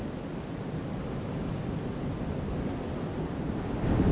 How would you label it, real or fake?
real